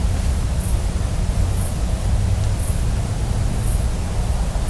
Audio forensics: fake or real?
real